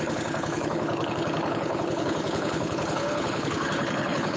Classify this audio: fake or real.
fake